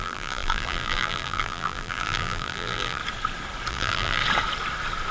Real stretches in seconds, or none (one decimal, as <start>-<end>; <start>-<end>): 3.0-3.7; 4.2-5.1